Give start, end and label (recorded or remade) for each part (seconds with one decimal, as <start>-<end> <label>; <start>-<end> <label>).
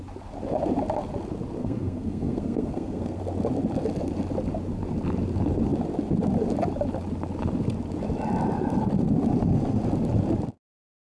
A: 0.0-1.6 recorded; 1.6-3.2 remade; 3.2-11.1 recorded